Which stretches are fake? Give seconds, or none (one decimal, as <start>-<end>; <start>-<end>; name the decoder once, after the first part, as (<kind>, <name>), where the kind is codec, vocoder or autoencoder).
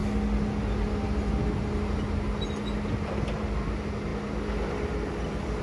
none